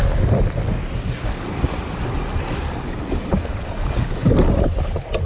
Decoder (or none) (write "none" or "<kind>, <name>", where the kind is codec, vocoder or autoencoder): none